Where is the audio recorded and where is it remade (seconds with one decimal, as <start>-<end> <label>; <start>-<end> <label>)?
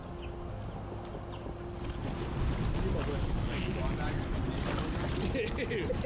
0.0-6.1 recorded